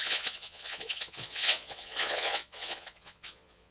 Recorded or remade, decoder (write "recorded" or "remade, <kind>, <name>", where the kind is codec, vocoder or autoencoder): remade, vocoder, Vocos